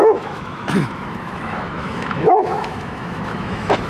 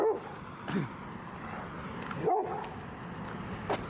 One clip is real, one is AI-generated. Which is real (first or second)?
second